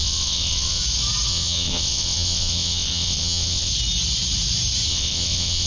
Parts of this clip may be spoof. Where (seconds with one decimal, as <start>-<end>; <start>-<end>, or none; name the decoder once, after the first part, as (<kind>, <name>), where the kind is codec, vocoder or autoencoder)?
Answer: 0.0-0.8 (vocoder, WaveNeXt); 1.3-3.7; 4.9-5.7